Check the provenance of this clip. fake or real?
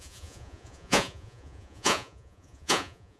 fake